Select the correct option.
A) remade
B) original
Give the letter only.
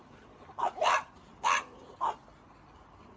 B